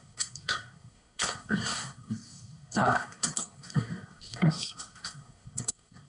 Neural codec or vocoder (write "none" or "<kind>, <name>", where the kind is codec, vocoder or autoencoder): codec, SNAC